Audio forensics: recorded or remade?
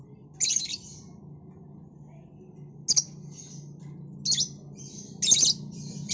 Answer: recorded